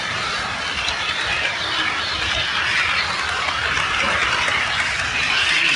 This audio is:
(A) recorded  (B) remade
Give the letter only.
A